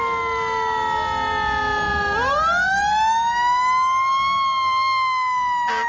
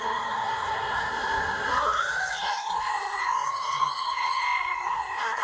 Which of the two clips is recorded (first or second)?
first